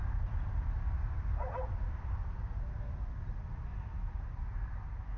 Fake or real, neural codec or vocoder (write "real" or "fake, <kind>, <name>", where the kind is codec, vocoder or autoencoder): real